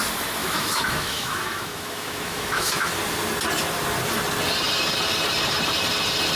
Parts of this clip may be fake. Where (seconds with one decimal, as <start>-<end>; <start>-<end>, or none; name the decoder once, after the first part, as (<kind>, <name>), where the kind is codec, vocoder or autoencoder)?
0.4-2.9 (autoencoder, DAC-VAE)